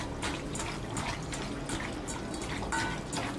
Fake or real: real